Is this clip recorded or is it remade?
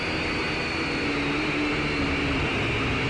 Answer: recorded